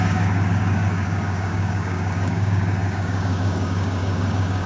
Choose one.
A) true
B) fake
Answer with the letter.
B